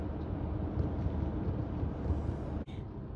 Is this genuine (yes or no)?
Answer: yes